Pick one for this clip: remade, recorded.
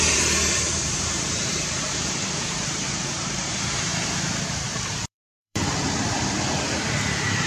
remade